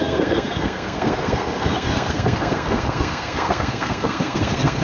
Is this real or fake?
fake